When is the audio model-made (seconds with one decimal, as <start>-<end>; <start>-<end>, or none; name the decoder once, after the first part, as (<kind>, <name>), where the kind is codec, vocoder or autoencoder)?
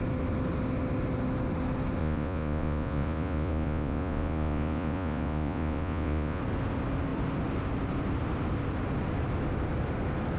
2.0-6.4 (vocoder, Vocos)